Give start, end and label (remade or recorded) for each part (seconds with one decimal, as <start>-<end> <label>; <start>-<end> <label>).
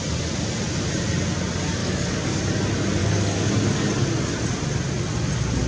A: 0.0-1.8 recorded; 1.8-2.4 remade; 2.4-3.0 recorded; 3.0-3.5 remade; 3.5-5.7 recorded